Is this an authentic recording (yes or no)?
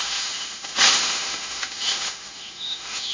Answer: no